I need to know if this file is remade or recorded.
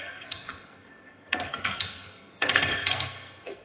remade